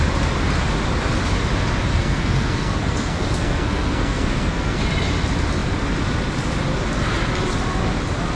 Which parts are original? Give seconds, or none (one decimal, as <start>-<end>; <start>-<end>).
0.0-1.9; 4.8-8.4